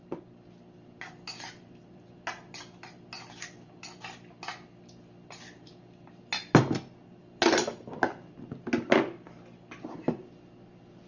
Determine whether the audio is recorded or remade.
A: recorded